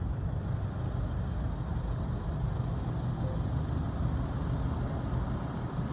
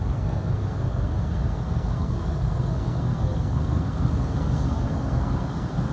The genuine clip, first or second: first